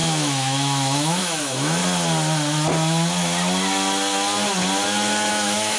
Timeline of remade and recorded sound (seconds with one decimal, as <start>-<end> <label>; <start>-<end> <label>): 0.0-1.8 remade; 1.8-5.3 recorded; 5.3-5.8 remade